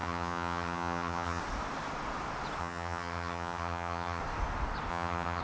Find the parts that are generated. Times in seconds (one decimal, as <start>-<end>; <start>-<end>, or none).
0.0-1.4; 2.6-4.2; 4.9-5.4